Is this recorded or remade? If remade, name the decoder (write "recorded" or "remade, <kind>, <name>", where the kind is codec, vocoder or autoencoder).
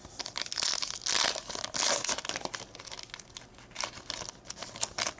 recorded